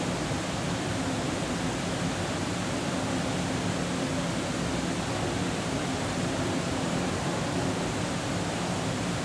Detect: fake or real real